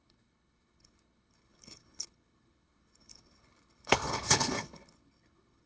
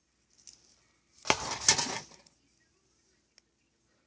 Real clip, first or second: second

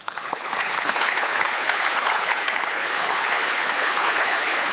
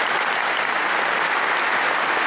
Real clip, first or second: second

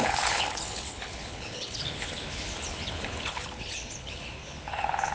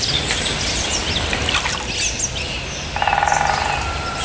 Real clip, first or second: second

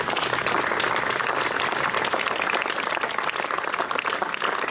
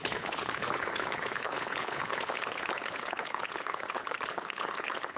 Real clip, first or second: first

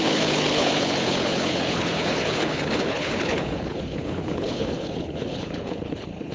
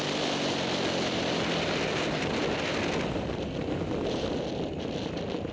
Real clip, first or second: second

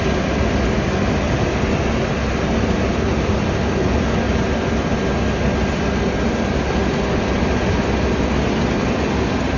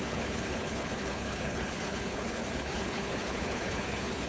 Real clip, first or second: first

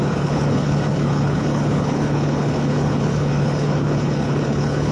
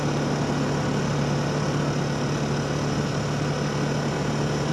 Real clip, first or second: second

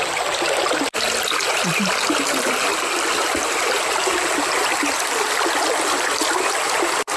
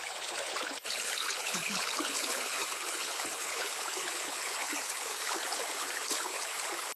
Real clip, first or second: first